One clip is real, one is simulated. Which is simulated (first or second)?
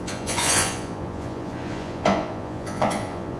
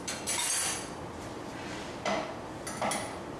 first